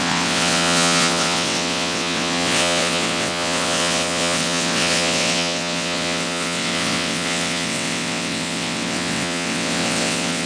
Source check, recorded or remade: remade